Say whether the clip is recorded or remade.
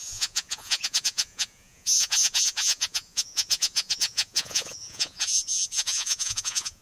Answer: remade